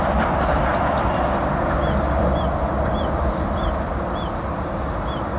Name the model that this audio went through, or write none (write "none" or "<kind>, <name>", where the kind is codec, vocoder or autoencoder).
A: vocoder, BigVGAN v2